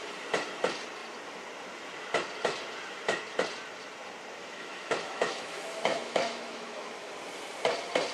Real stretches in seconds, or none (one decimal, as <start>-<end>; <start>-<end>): 0.0-4.4; 7.1-8.1